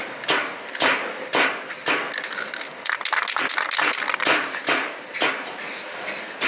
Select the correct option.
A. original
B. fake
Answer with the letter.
A